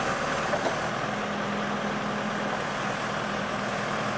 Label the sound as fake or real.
real